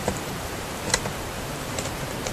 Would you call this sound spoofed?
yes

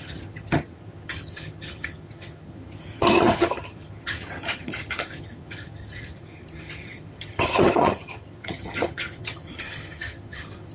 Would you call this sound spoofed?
yes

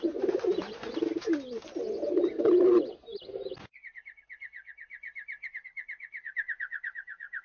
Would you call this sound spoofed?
no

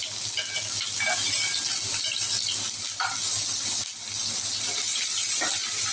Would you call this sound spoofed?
no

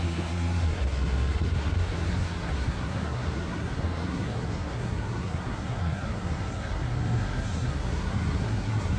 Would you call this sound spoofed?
yes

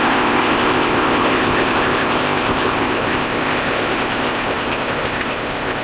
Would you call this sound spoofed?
yes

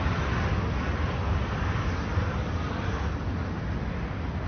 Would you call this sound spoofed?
no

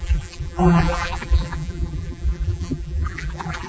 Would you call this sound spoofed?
yes